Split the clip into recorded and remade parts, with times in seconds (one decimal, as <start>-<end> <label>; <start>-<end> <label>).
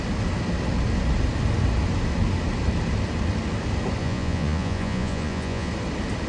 0.0-4.0 recorded; 4.0-5.7 remade; 5.7-6.3 recorded